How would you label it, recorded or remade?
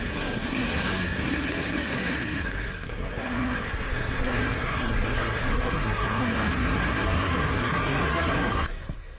remade